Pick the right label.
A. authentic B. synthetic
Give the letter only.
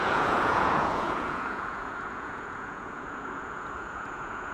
B